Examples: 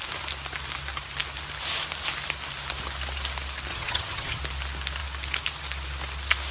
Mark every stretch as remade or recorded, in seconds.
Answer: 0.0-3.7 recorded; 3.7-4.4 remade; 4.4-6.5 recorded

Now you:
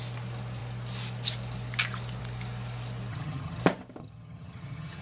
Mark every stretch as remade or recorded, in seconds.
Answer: 0.0-3.1 recorded; 3.1-3.6 remade; 3.6-4.0 recorded; 4.0-5.0 remade

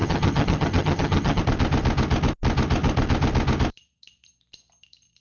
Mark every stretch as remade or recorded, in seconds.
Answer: 0.0-1.4 remade; 1.4-5.2 recorded

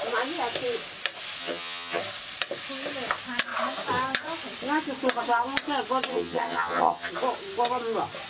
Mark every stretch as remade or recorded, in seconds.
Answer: 0.0-1.4 recorded; 1.4-2.0 remade; 2.0-6.1 recorded; 6.1-7.1 remade; 7.1-8.3 recorded

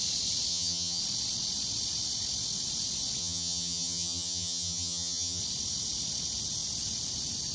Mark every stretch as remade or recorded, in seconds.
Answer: 0.0-0.5 recorded; 0.5-1.0 remade; 1.0-3.2 recorded; 3.2-5.4 remade; 5.4-7.5 recorded

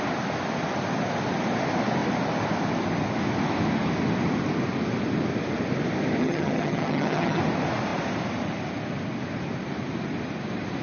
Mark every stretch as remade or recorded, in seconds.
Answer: 0.0-6.2 recorded; 6.2-7.4 remade; 7.4-10.8 recorded

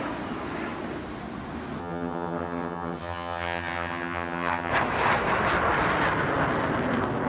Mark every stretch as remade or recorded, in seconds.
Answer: 0.0-1.8 recorded; 1.8-4.7 remade; 4.7-7.3 recorded

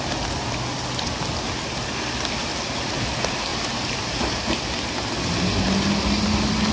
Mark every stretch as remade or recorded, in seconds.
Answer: 0.0-6.7 recorded